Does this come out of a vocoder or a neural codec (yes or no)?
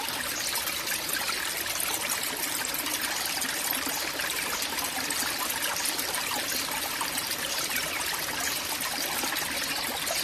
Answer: no